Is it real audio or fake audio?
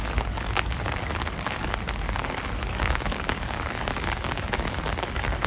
fake